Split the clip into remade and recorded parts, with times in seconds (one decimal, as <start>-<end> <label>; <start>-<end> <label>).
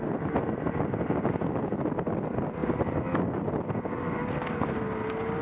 0.0-5.4 recorded